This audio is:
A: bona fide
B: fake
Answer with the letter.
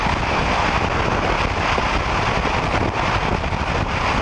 A